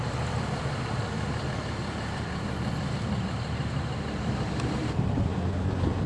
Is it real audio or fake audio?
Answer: fake